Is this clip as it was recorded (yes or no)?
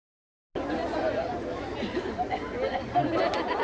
yes